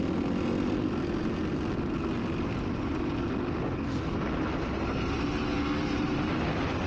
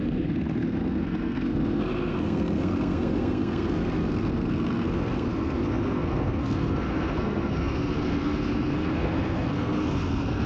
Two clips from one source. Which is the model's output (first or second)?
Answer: second